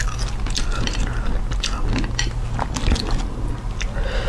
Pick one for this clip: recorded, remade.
recorded